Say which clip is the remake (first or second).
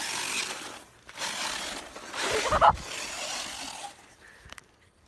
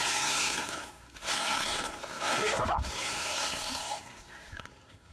second